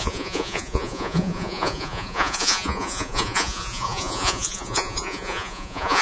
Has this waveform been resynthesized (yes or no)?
yes